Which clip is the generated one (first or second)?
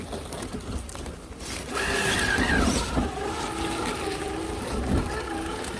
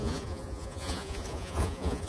second